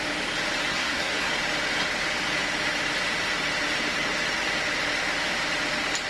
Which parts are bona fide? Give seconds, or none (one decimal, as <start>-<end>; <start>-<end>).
0.0-0.7; 1.3-6.1